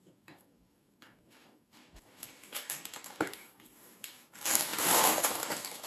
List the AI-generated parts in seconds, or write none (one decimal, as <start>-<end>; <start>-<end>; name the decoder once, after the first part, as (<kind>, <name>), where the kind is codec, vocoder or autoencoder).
0.0-5.9 (codec, DAC)